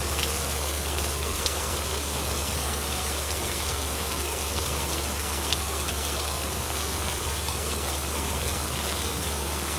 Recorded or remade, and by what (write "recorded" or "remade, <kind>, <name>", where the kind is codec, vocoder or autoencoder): remade, codec, SNAC